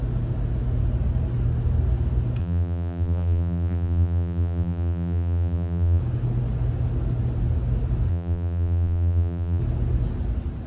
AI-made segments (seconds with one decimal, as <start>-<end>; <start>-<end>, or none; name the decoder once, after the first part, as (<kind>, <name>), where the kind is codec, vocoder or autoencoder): 2.4-6.0 (vocoder, BigVGAN v2); 8.1-9.6